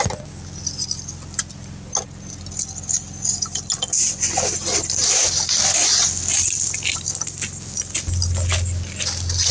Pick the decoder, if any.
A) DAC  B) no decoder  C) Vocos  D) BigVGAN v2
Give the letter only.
B